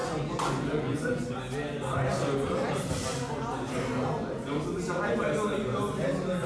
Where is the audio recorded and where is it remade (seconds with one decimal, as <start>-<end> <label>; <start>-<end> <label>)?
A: 0.0-1.3 remade; 1.3-6.5 recorded